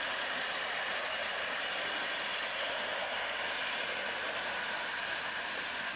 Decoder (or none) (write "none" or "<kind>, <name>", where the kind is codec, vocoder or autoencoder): none